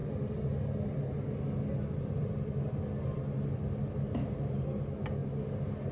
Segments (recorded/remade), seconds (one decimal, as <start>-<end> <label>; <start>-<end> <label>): 0.0-5.9 recorded